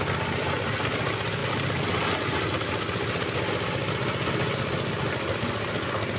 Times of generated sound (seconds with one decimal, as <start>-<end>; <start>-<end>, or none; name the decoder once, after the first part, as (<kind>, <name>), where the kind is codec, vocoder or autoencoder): none